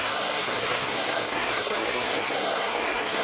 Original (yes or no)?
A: no